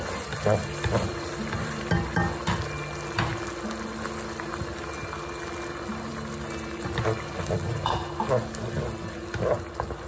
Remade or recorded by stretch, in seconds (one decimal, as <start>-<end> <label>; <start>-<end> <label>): 0.0-0.6 recorded; 0.6-1.9 remade; 1.9-10.1 recorded